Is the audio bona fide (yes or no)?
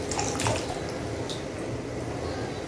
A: yes